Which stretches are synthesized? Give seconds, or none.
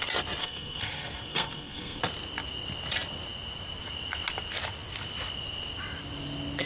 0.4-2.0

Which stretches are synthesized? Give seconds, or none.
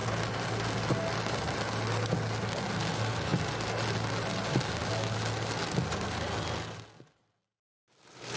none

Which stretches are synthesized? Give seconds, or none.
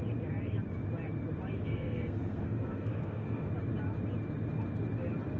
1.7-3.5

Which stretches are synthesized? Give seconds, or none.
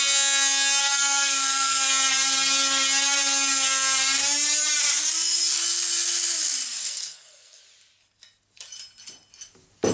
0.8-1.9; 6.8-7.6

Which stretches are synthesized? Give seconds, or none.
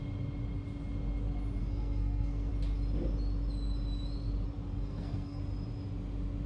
1.6-2.5; 4.7-5.4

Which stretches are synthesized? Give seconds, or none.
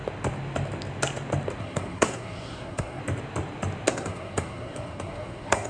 1.6-3.0; 3.9-5.7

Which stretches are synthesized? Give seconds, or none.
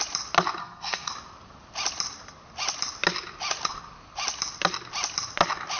0.6-1.1